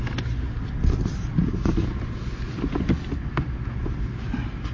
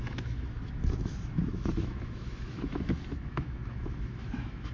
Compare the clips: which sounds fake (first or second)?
second